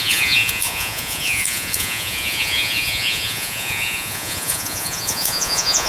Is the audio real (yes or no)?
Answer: no